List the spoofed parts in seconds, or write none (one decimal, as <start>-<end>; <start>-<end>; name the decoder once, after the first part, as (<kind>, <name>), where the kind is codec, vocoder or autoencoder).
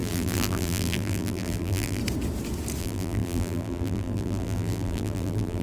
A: 0.0-2.0 (vocoder, BigVGAN v2); 2.8-5.6